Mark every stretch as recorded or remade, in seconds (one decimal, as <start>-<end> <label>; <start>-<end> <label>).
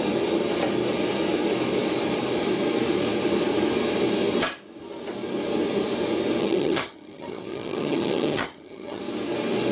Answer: 0.0-6.4 recorded; 6.4-9.0 remade; 9.0-9.7 recorded